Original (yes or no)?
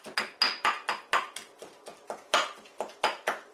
yes